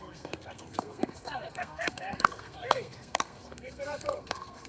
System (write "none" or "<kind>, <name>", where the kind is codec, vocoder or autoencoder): codec, SNAC